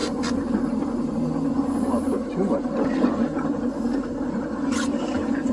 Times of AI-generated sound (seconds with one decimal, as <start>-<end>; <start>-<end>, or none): none